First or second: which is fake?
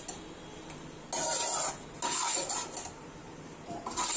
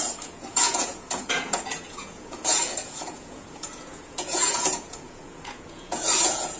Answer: second